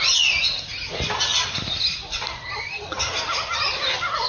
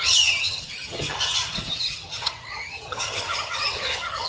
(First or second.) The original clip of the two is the first